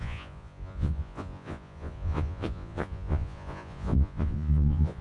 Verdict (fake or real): fake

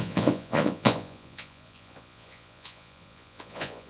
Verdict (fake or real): fake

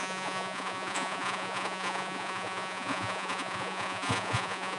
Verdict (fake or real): fake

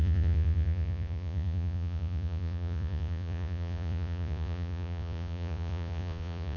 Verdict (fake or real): fake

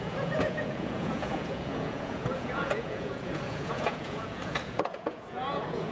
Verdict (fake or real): fake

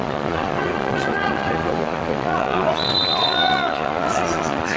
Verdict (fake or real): fake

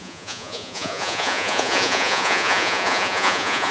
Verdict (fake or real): fake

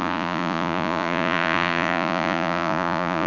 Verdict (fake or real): fake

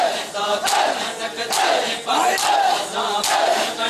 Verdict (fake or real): real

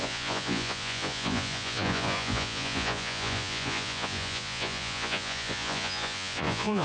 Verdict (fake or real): fake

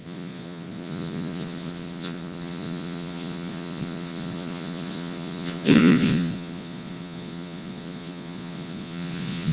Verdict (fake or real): fake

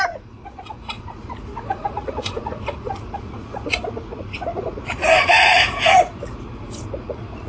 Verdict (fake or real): fake